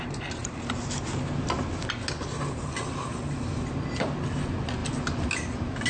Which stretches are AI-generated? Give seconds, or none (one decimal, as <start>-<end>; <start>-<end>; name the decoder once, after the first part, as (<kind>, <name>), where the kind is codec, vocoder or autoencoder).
none